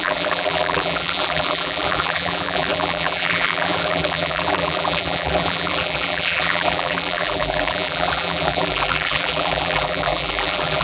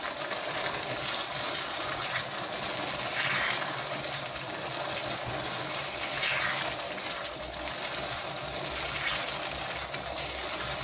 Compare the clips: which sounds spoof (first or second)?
first